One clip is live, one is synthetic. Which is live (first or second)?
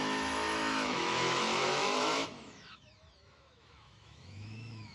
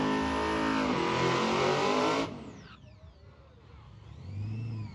second